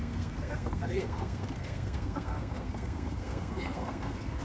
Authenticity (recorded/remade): remade